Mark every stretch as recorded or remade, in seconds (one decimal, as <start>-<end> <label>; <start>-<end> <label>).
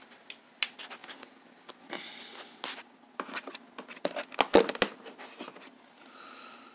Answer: 0.0-6.7 recorded